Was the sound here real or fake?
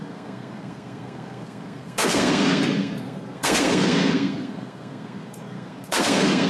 fake